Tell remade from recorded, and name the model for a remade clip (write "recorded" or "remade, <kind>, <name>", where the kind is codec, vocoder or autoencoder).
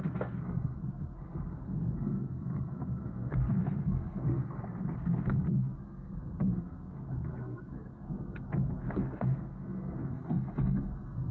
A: remade, codec, SNAC